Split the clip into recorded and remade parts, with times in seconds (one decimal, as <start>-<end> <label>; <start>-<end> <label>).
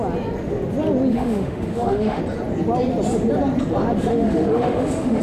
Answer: 0.0-1.1 recorded; 1.1-2.2 remade; 2.2-4.1 recorded; 4.1-5.2 remade